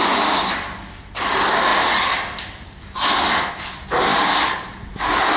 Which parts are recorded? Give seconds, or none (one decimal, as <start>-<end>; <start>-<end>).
0.0-4.1; 5.0-5.4